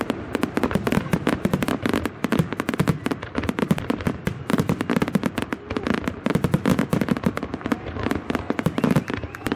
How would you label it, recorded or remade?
recorded